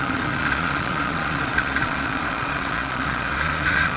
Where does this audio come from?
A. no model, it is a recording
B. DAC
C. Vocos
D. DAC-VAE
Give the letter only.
C